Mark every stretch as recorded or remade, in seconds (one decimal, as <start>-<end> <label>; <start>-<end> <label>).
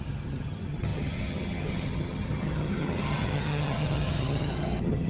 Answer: 0.0-5.1 remade